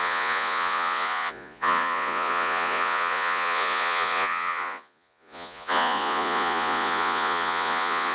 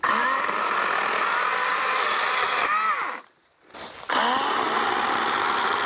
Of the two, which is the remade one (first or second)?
first